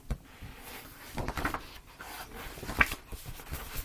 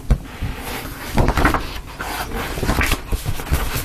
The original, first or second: second